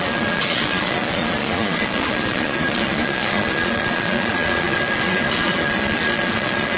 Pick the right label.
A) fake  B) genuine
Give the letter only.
A